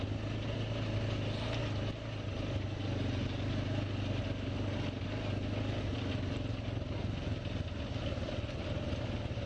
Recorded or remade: recorded